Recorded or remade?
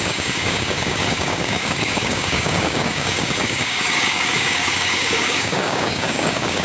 remade